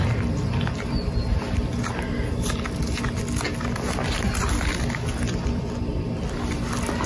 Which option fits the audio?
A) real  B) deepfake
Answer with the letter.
A